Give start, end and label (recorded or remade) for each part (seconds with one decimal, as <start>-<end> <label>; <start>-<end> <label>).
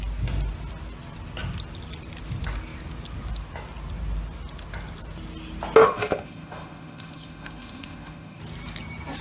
0.0-5.8 recorded; 5.8-8.4 remade; 8.4-9.2 recorded